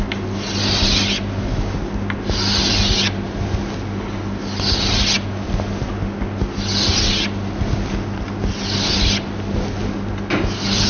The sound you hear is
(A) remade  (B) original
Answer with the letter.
B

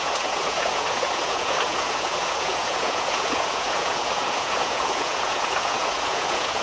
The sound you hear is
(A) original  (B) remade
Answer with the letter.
B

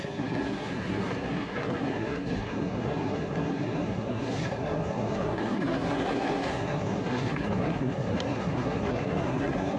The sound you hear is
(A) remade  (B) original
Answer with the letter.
A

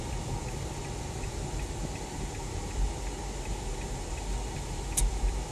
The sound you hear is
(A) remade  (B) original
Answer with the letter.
B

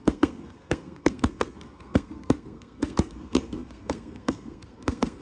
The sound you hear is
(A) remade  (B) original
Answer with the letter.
A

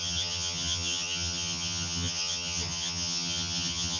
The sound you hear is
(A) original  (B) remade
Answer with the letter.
B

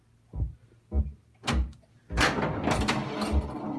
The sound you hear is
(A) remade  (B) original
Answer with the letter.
B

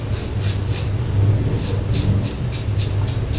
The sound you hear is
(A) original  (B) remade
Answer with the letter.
A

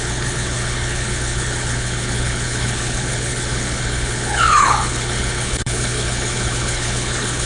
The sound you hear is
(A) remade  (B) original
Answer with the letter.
A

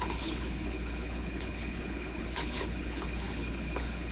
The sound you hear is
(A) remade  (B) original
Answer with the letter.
A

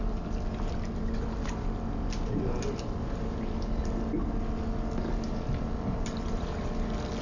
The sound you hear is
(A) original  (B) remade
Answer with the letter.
A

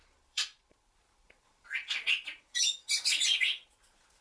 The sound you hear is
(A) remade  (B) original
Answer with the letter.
A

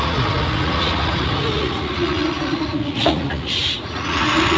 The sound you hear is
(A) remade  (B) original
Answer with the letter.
A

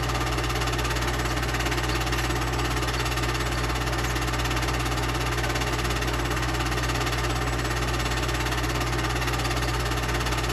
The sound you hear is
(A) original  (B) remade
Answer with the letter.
A